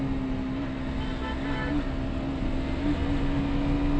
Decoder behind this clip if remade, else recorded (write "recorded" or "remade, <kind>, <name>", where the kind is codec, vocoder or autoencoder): recorded